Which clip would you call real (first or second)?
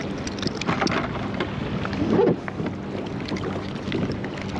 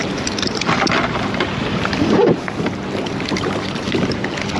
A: first